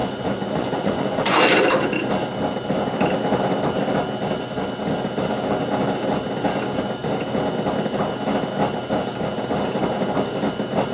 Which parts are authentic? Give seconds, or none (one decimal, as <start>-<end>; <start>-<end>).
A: 1.4-10.9